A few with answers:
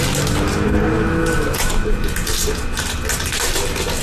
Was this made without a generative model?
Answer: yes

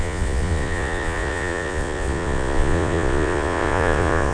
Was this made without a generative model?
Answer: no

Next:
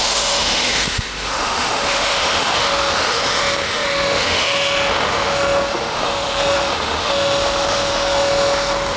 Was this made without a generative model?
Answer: no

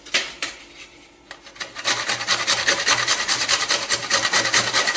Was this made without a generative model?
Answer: no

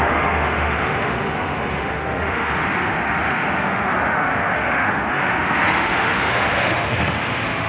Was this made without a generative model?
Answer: no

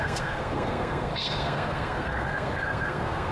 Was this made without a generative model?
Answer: no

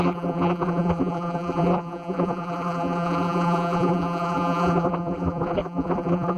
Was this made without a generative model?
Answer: no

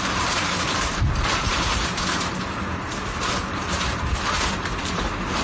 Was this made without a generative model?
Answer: no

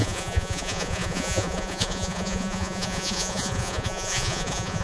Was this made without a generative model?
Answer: no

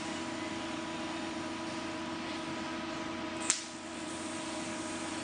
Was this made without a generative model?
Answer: yes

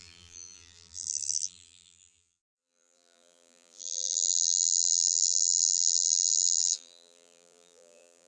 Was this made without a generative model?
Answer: no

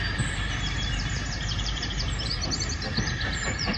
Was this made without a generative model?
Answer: no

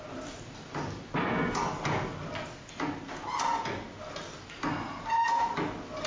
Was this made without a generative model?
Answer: yes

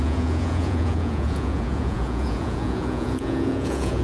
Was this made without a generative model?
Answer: no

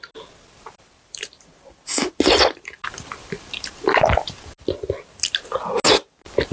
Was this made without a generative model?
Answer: yes